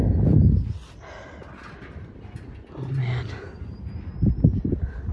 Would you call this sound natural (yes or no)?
yes